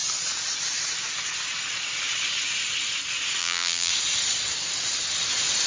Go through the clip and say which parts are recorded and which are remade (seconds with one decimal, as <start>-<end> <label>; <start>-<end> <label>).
0.0-3.4 recorded; 3.4-3.9 remade; 3.9-5.7 recorded